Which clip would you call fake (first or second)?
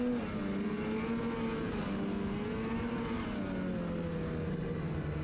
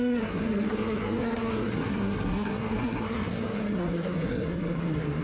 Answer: second